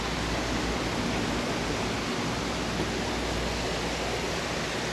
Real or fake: real